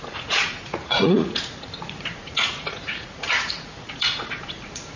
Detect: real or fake fake